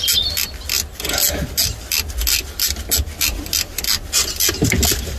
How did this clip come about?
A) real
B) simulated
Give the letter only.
A